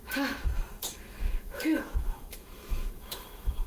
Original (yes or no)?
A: no